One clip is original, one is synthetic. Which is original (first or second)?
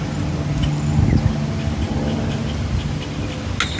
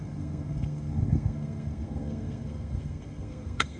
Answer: first